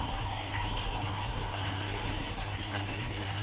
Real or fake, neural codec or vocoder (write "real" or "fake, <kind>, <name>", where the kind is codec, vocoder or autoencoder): fake, codec, SNAC